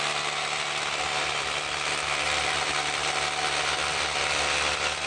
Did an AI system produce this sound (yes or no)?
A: no